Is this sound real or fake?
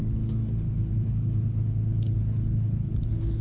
fake